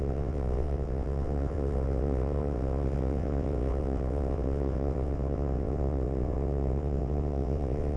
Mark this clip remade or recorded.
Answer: remade